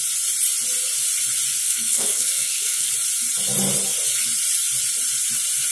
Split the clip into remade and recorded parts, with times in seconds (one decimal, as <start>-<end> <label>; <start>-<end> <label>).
0.0-1.6 recorded; 1.6-2.9 remade; 2.9-5.7 recorded